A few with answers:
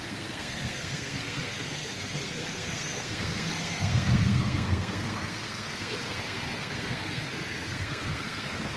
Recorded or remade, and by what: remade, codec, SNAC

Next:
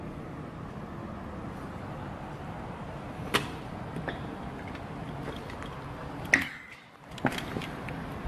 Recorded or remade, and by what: recorded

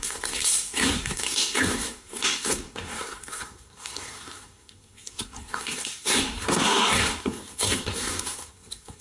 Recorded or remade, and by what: remade, codec, SNAC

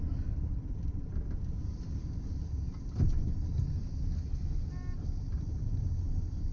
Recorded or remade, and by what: recorded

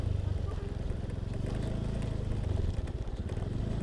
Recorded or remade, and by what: recorded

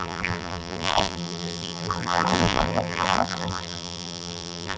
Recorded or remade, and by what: remade, vocoder, BigVGAN v2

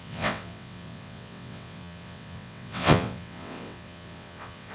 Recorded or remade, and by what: remade, vocoder, WaveNeXt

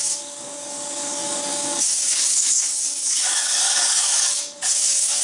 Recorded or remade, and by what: remade, codec, DAC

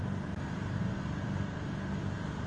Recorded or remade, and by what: recorded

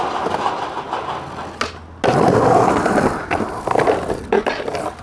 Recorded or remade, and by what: recorded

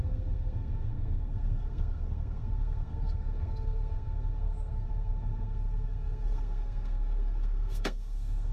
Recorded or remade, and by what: remade, codec, SNAC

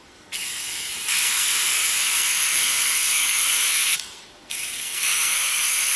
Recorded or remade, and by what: remade, codec, SNAC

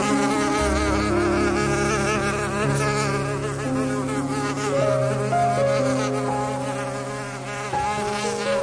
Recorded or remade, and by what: recorded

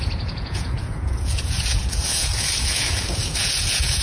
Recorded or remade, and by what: remade, vocoder, Vocos